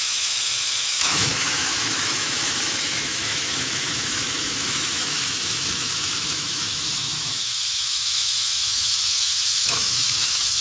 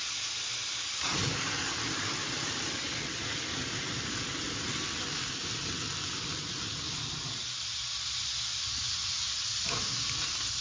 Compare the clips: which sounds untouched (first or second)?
second